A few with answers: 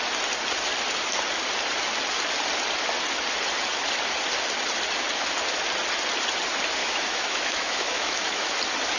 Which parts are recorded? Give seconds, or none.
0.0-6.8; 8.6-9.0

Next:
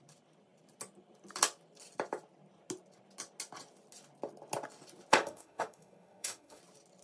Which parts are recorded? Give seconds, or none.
0.0-5.1; 6.6-7.0